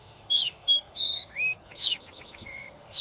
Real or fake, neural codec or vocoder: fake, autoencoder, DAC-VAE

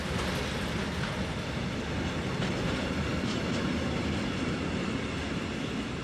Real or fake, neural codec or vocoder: real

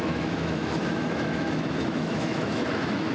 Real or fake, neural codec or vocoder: fake, autoencoder, DAC-VAE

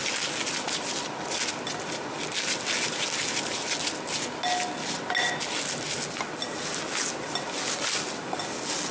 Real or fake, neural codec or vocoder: real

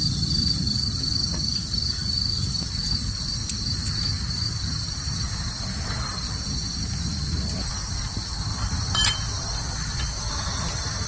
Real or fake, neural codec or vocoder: real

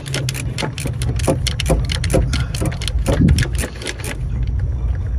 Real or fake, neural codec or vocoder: real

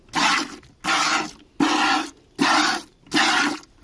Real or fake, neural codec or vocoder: real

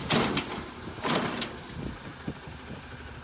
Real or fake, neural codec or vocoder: real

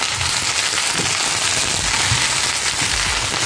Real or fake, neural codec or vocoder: real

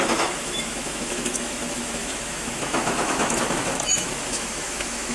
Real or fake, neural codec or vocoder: fake, autoencoder, DAC-VAE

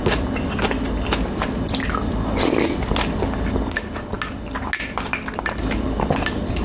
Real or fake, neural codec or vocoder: real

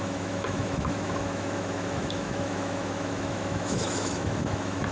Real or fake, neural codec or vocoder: fake, autoencoder, DAC-VAE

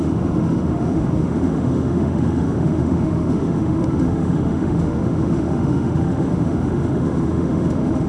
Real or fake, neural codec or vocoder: fake, autoencoder, DAC-VAE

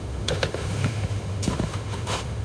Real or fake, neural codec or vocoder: fake, autoencoder, DAC-VAE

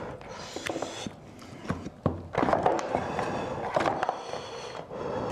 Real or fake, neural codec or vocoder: real